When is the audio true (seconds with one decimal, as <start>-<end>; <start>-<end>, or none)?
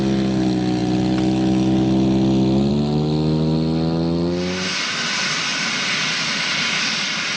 0.0-7.4